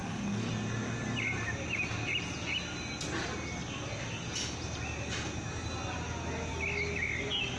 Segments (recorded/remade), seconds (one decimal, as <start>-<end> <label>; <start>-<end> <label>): 0.0-0.5 remade; 0.5-7.6 recorded